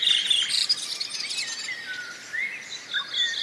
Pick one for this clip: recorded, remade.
recorded